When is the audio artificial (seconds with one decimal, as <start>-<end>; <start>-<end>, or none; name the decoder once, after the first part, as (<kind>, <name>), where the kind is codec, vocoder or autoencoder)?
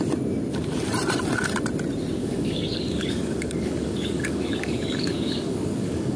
2.2-6.2 (codec, DAC)